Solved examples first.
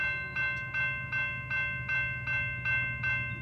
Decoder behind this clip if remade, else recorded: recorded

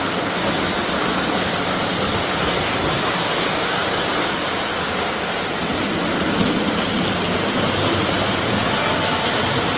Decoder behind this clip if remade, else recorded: recorded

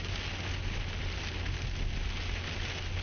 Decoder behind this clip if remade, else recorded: recorded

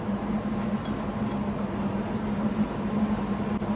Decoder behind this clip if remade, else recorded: recorded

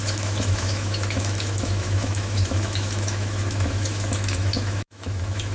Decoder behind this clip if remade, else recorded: remade, autoencoder, DAC-VAE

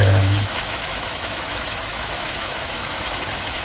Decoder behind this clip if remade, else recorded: remade, autoencoder, DAC-VAE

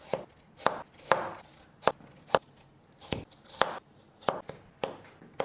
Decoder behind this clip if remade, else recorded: recorded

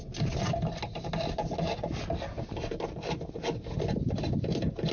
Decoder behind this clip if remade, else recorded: recorded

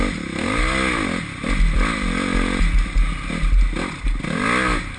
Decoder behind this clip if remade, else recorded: recorded